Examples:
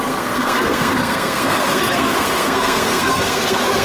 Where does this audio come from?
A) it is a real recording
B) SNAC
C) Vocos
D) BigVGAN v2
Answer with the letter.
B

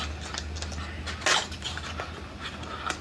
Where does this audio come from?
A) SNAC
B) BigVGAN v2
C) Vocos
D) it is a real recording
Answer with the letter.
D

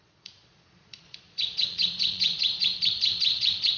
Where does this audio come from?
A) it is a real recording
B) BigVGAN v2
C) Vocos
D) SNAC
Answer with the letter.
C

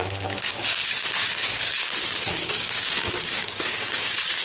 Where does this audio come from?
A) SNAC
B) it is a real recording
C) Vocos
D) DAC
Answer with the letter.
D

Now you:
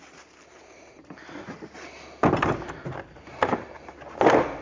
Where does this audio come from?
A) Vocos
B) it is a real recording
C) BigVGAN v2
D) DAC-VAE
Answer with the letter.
B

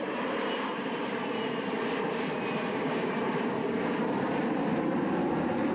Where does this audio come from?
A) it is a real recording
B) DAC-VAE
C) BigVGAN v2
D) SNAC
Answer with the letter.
C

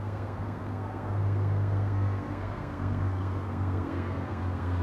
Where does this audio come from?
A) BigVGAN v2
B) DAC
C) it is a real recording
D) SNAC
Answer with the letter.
D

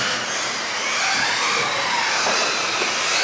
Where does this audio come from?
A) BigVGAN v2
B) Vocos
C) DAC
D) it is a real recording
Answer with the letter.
A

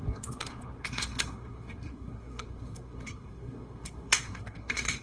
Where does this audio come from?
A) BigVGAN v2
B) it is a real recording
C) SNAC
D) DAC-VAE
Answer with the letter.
C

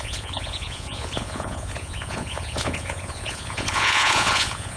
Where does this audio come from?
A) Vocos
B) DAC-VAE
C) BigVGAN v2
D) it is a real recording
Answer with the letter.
A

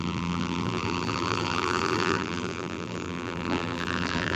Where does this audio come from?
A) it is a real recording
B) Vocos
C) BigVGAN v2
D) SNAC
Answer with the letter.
C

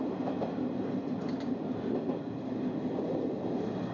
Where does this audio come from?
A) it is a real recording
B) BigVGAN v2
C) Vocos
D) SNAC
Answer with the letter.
A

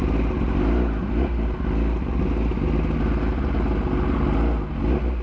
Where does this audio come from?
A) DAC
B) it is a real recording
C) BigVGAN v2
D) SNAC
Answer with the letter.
B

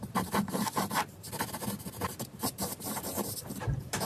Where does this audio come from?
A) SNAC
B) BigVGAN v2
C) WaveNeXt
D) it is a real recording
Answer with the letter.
B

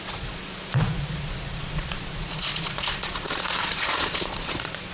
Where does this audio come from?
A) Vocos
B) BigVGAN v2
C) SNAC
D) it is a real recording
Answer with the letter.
A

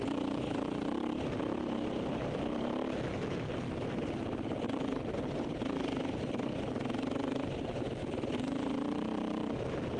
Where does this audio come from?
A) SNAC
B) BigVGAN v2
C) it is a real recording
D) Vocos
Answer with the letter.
C